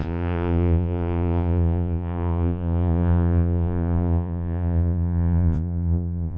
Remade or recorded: remade